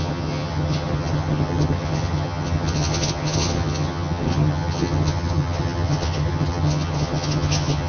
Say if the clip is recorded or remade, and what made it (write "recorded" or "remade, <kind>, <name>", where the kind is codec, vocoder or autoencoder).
remade, vocoder, HiFi-GAN